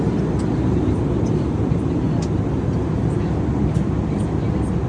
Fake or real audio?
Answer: real